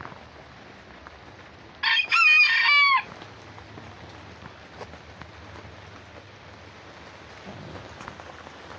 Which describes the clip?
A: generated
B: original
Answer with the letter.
B